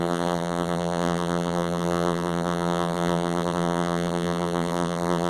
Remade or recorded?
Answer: remade